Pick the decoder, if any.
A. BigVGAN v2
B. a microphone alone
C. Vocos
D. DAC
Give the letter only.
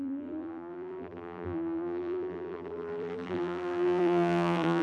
A